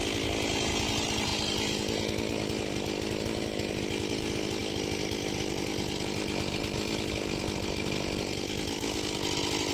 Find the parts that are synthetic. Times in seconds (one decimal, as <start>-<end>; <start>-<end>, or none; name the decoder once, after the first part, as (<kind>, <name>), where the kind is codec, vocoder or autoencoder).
4.6-6.6 (vocoder, BigVGAN v2)

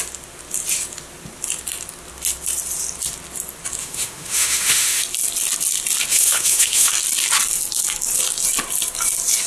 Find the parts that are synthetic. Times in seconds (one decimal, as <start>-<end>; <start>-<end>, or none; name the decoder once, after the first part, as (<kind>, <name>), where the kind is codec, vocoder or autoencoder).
3.8-5.0 (autoencoder, DAC-VAE); 6.1-6.9

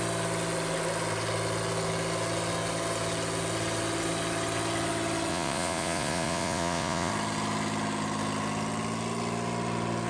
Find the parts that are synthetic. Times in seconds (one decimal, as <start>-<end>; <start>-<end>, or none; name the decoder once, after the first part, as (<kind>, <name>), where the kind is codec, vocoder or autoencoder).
5.3-7.1 (vocoder, Vocos)

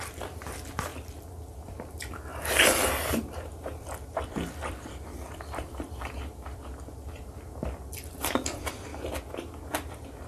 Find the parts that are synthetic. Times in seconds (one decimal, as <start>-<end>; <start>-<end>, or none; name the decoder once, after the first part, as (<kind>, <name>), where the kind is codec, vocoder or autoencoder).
0.0-2.3 (vocoder, BigVGAN v2); 3.1-8.9; 9.9-10.3

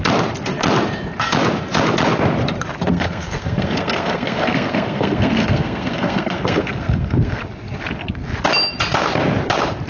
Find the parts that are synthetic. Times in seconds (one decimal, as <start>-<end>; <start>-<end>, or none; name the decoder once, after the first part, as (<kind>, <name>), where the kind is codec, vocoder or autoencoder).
2.9-7.4 (codec, SNAC)